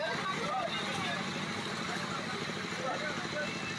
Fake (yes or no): no